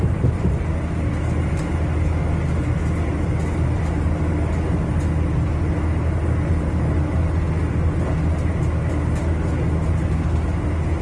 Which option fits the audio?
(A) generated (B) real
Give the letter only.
B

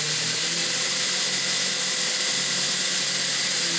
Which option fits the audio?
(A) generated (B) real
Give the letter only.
B